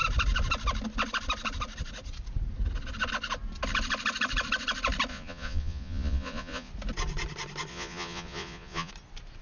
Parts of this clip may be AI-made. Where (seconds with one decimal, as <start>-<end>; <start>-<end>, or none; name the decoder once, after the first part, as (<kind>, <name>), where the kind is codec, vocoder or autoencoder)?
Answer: 5.1-6.7 (vocoder, Vocos); 7.7-8.9